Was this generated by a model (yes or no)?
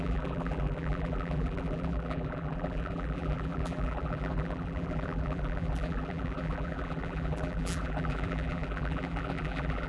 yes